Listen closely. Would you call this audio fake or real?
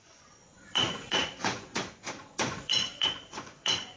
fake